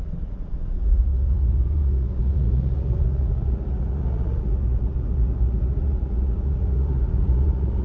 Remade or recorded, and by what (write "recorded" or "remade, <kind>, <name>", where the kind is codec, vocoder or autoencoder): remade, vocoder, Vocos